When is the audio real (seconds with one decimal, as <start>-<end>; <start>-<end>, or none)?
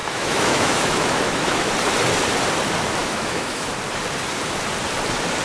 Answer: 1.7-3.0; 3.7-5.4